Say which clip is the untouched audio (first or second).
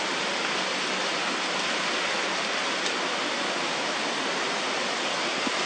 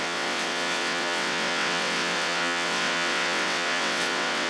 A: first